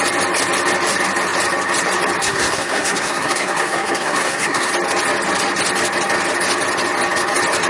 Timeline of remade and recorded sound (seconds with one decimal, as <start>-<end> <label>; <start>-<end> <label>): 0.0-2.2 recorded; 2.2-4.7 remade; 4.7-7.7 recorded